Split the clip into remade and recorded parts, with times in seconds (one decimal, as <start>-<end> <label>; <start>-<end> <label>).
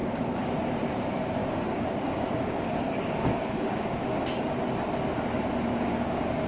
0.0-0.5 remade; 0.5-1.4 recorded; 1.4-4.5 remade; 4.5-5.7 recorded; 5.7-6.5 remade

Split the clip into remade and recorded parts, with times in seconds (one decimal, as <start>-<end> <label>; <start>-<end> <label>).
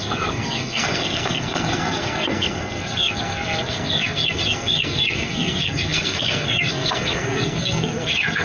0.0-8.4 remade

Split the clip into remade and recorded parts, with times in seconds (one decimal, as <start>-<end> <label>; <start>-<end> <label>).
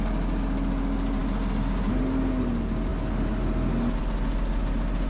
0.0-5.1 recorded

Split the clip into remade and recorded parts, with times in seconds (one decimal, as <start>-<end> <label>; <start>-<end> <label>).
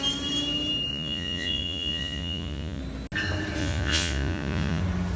0.0-0.9 recorded; 0.9-2.8 remade; 2.8-3.6 recorded; 3.6-4.8 remade; 4.8-5.2 recorded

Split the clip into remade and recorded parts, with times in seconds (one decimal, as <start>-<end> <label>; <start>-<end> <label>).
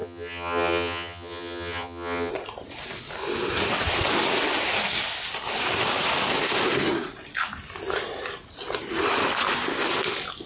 0.0-2.3 remade; 2.3-10.5 recorded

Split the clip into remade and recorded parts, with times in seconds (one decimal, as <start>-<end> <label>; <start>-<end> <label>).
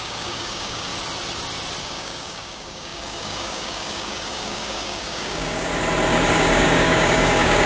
0.0-0.9 remade; 0.9-1.8 recorded; 1.8-5.7 remade; 5.7-6.3 recorded; 6.3-7.7 remade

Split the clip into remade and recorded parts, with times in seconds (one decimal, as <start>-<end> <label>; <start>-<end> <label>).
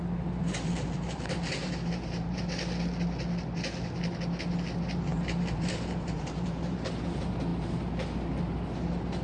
0.0-0.4 recorded; 0.4-2.4 remade; 2.4-5.1 recorded; 5.1-6.9 remade; 6.9-9.2 recorded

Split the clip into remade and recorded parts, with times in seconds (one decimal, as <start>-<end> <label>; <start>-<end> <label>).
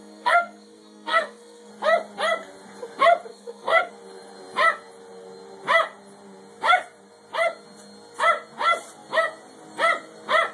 0.0-1.7 remade; 1.7-3.3 recorded; 3.3-3.9 remade; 3.9-10.5 recorded